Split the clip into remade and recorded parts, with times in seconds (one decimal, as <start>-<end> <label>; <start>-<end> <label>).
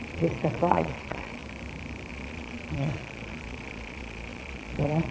0.0-1.4 remade; 1.4-2.1 recorded; 2.1-5.1 remade